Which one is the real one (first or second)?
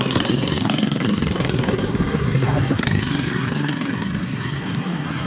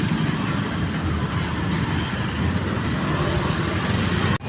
second